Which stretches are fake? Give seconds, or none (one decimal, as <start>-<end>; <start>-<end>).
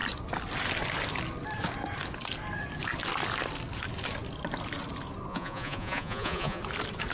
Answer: 5.3-6.6